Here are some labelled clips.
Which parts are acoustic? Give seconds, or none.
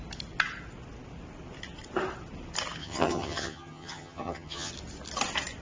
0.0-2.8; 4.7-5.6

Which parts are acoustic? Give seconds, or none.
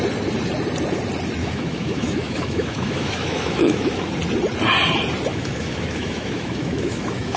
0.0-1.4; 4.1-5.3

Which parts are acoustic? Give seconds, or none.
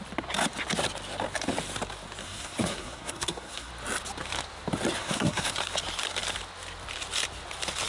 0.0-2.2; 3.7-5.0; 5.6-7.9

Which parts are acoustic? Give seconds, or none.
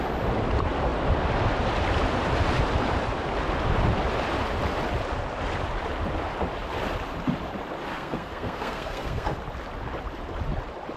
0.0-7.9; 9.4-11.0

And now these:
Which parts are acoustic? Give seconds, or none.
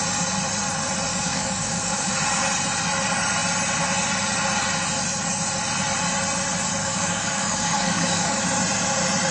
0.0-1.1; 2.1-6.8; 8.4-9.3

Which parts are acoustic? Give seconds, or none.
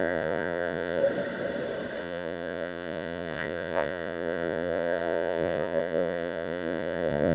1.0-2.0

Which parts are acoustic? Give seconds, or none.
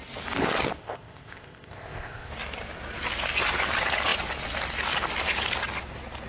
0.0-0.8; 2.3-6.3